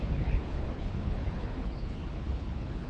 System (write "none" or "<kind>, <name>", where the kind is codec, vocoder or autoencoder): codec, HILCodec